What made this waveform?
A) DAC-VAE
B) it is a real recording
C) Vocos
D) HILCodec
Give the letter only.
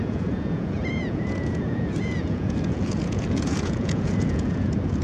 C